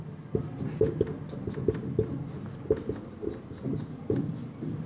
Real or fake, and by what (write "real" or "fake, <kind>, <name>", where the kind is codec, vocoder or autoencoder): real